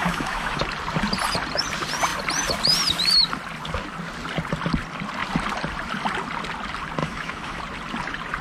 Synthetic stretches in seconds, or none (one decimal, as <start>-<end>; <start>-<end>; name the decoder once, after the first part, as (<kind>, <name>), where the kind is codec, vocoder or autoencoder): 0.0-0.6 (autoencoder, DAC-VAE); 7.0-7.6